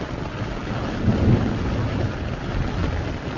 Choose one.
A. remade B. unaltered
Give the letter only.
B